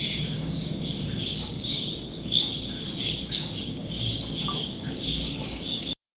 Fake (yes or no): yes